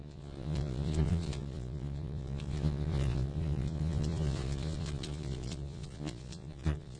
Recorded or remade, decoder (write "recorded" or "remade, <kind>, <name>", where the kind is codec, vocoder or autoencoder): remade, vocoder, Vocos